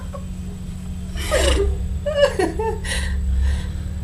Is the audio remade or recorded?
recorded